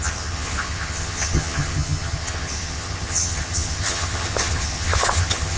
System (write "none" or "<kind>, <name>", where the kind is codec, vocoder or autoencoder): vocoder, HiFi-GAN